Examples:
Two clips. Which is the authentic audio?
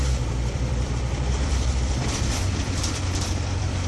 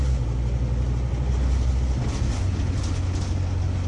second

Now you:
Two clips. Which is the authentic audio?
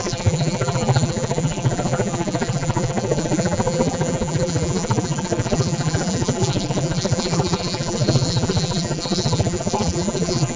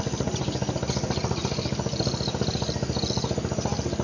second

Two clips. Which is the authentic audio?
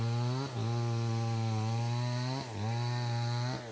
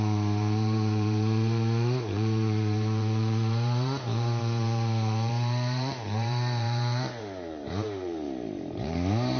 first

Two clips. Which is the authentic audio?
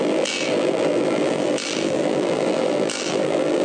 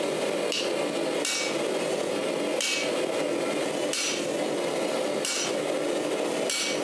second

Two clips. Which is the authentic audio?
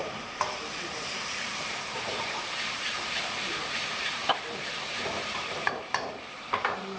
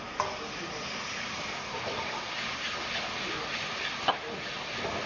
second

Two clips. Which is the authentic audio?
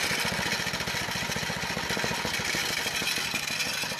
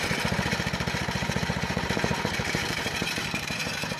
first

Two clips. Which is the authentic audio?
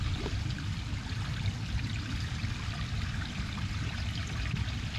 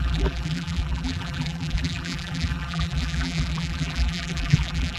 first